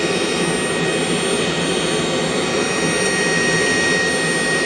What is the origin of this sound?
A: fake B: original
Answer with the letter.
B